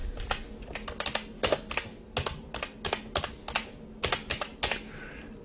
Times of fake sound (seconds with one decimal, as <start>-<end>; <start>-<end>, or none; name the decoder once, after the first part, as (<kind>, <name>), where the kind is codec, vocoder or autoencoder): none